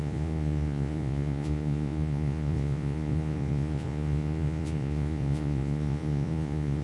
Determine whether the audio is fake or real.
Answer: fake